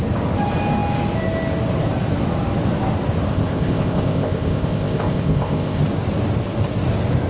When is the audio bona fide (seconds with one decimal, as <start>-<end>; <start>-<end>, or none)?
0.0-3.3; 5.8-7.3

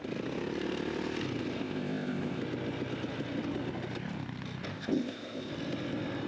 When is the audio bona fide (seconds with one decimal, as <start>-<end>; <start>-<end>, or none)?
0.0-1.6; 2.4-4.7; 5.5-6.3

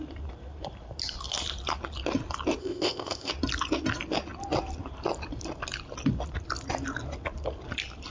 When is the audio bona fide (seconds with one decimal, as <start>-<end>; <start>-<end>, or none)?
0.0-2.6; 3.3-8.1

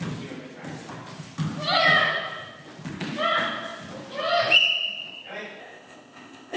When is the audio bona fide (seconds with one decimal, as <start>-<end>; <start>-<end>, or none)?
0.0-5.6

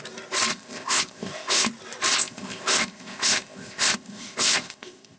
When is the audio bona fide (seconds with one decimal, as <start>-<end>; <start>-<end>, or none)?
0.0-0.5; 1.7-2.1